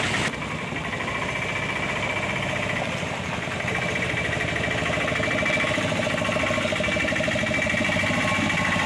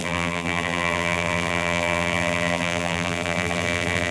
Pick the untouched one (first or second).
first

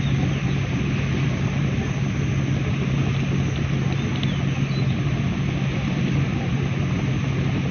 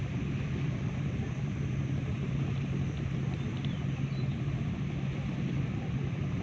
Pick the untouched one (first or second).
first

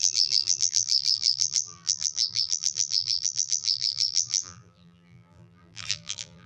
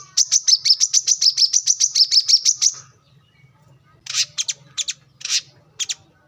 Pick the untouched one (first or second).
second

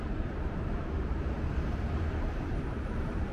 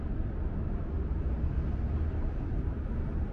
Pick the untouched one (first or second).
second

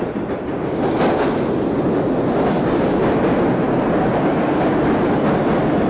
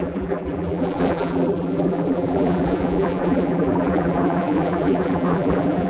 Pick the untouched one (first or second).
first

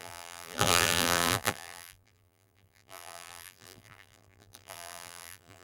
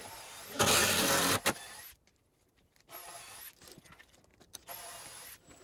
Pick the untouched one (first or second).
second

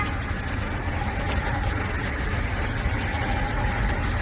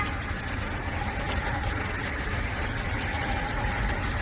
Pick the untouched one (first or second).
first